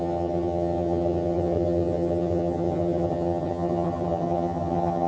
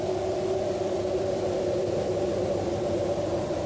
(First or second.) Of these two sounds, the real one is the second